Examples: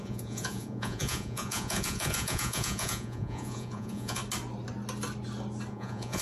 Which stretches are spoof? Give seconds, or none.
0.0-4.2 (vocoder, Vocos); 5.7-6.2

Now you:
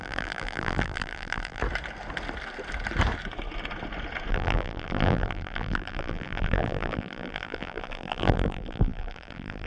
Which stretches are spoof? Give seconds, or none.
0.0-1.6 (vocoder, BigVGAN v2); 4.3-9.7

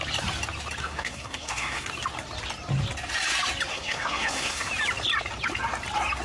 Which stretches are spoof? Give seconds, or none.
0.8-1.9 (codec, SNAC); 3.7-4.7

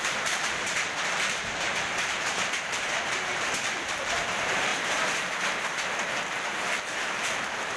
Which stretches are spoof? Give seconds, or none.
0.0-4.7 (vocoder, BigVGAN v2); 6.7-7.8

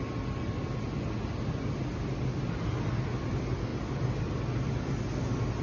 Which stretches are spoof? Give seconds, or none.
3.7-4.3 (vocoder, BigVGAN v2)

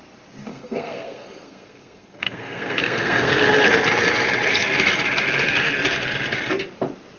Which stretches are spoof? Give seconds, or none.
0.5-3.4 (codec, SNAC)

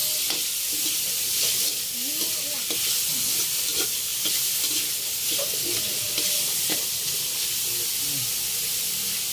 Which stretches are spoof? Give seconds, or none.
none